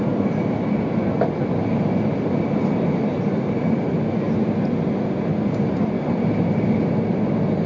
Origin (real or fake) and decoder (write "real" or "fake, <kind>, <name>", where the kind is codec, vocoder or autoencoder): real